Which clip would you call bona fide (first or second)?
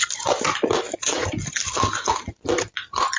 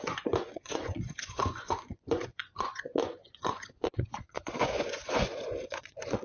first